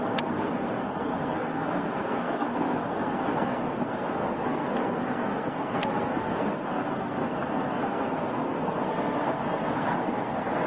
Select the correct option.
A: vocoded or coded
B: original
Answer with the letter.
A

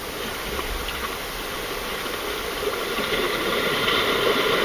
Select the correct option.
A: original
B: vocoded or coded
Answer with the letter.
A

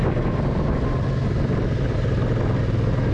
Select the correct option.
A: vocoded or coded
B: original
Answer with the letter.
B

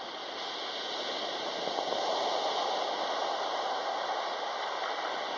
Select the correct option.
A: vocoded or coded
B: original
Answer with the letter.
B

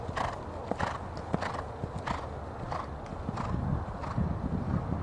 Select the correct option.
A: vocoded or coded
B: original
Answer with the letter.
B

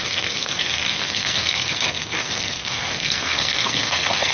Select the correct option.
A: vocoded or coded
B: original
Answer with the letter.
A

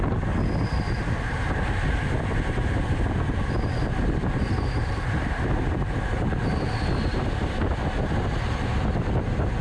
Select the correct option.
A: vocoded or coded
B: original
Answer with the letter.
B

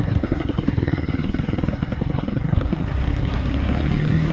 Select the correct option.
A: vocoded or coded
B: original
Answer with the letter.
A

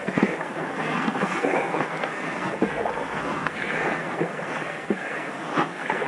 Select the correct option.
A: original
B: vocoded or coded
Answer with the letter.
B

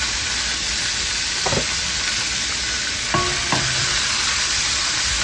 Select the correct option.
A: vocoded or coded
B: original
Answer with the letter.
B